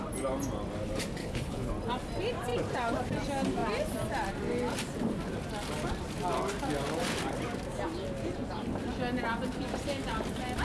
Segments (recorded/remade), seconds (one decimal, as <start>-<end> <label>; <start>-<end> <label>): 0.0-1.2 recorded; 1.2-1.7 remade; 1.7-10.6 recorded